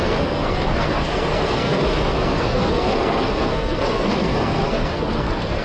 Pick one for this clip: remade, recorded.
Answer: remade